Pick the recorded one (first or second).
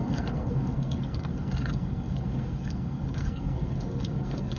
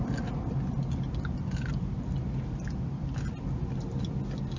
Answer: second